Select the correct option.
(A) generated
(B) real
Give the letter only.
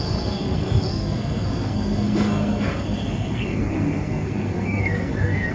A